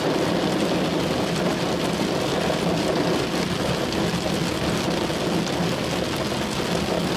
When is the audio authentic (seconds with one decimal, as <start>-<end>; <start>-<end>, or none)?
0.0-7.2